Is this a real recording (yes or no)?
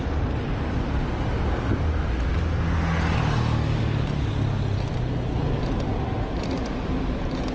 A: yes